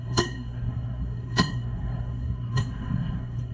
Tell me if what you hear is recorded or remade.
remade